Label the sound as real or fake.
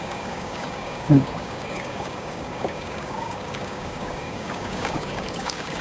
fake